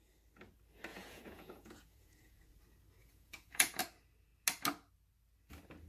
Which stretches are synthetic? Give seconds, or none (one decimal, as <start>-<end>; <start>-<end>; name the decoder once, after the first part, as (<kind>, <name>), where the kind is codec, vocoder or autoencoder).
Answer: 0.9-2.4 (vocoder, Vocos); 3.0-3.8